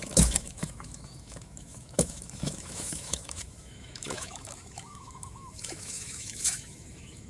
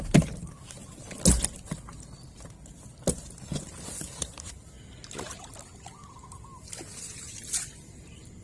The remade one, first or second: first